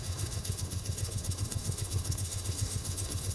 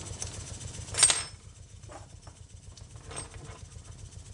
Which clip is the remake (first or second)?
first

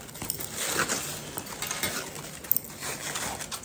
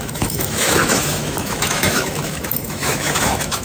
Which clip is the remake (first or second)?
second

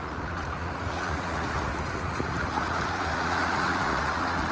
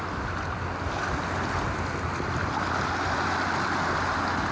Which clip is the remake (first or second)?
first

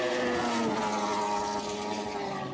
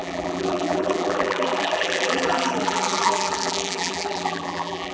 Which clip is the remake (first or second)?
second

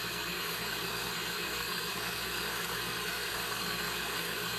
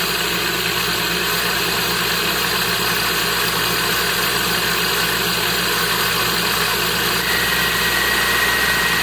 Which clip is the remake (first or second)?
first